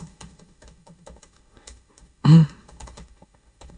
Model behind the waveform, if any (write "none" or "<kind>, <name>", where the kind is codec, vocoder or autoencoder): autoencoder, DAC-VAE